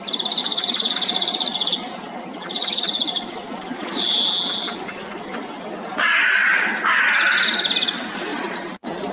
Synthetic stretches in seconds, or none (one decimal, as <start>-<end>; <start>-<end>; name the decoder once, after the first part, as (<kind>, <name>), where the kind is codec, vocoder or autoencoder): 0.4-4.1 (vocoder, Vocos); 8.3-9.1